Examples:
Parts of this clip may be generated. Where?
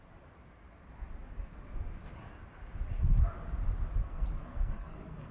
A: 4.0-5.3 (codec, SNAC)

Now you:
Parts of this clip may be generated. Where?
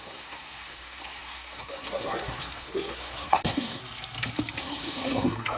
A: 0.0-3.8 (codec, SNAC); 4.6-5.6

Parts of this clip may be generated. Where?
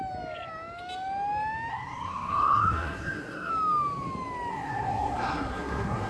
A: 1.7-3.5 (codec, SNAC); 4.5-6.1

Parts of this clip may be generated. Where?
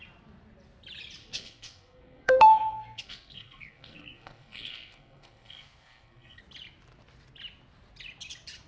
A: 1.2-6.4 (codec, SNAC)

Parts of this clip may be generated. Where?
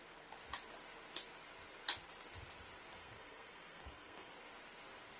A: 3.0-4.3 (codec, SNAC)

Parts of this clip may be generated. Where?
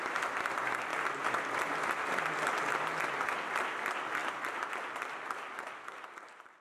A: none